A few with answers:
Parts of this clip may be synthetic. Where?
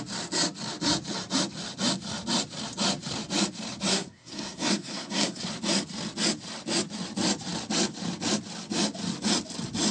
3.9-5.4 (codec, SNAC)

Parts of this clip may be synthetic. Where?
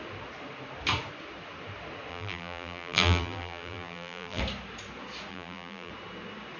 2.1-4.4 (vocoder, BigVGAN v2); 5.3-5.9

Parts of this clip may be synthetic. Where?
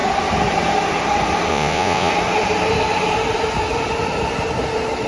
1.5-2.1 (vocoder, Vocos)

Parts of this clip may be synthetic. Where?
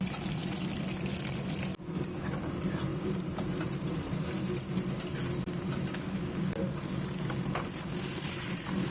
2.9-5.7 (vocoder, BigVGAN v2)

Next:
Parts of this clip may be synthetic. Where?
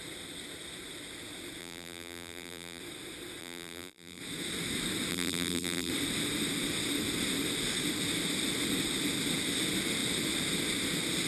1.6-2.8 (vocoder, BigVGAN v2); 3.4-4.2; 5.1-5.9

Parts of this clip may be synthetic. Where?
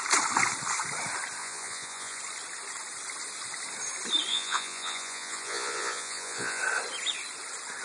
1.4-2.2 (vocoder, Vocos); 4.3-6.6